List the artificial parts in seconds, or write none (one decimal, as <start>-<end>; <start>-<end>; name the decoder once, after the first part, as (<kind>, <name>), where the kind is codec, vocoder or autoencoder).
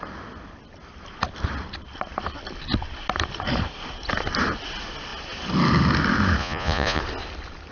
6.4-7.0 (vocoder, Vocos)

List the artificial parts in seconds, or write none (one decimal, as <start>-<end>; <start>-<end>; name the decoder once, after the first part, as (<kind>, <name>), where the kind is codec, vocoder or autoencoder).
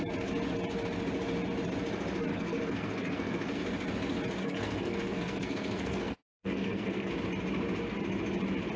2.3-3.6 (codec, SNAC); 4.4-7.1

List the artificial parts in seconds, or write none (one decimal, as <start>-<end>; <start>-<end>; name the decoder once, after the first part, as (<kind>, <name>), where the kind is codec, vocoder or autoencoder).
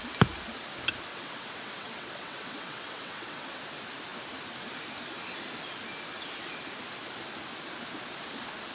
1.1-3.6 (vocoder, WaveNeXt)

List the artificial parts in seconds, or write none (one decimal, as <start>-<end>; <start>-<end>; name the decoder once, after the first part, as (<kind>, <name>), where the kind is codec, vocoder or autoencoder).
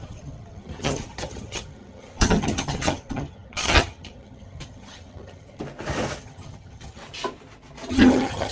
0.0-5.6 (vocoder, HiFi-GAN); 6.2-7.0; 7.9-8.5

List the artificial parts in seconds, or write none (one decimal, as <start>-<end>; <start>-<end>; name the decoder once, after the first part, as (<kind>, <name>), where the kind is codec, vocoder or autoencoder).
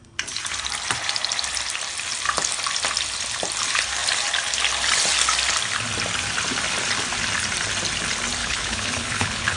8.4-9.6 (codec, HILCodec)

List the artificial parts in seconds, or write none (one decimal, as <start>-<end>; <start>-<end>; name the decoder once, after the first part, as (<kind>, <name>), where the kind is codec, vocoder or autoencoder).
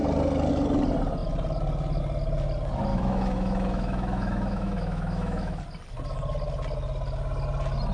2.9-5.6 (autoencoder, DAC-VAE)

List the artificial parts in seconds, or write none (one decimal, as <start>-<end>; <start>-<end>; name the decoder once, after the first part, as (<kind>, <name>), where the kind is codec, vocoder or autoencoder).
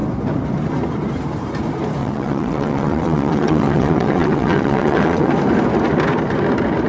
2.0-5.3 (vocoder, WaveNeXt)